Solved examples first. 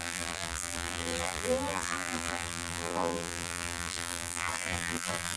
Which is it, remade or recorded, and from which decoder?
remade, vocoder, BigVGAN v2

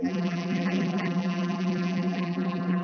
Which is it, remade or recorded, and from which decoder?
remade, vocoder, BigVGAN v2